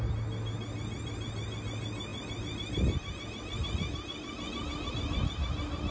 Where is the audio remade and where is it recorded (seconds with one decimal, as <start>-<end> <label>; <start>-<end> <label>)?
0.0-5.9 recorded